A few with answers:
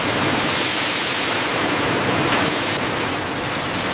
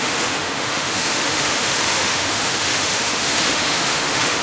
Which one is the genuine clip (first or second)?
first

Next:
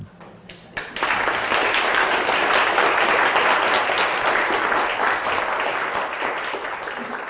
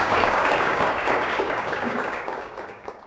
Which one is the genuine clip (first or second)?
first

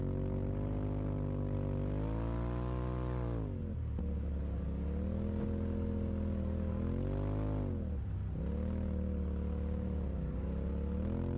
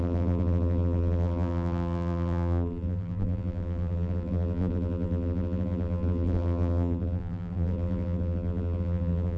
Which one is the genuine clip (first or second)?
first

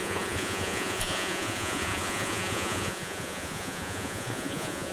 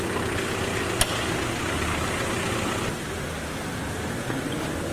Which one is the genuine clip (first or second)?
second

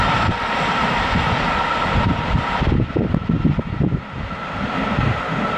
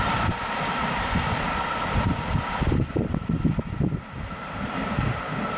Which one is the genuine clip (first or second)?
first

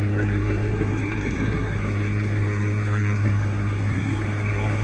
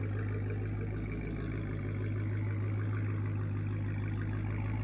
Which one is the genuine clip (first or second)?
second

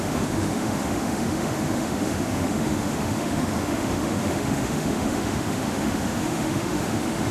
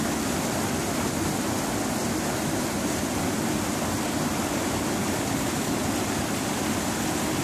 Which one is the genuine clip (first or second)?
second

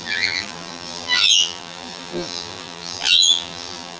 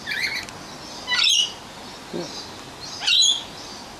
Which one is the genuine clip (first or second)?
second